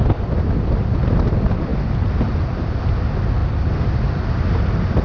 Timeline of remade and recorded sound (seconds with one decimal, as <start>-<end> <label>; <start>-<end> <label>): 0.0-5.0 recorded